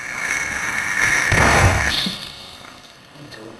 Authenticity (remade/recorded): remade